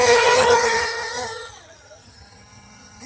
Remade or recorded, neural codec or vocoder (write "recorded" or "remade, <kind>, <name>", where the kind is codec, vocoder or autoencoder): remade, vocoder, HiFi-GAN